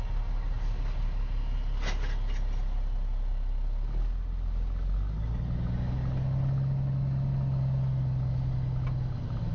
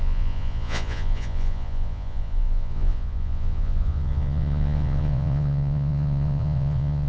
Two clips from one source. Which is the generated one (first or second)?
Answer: second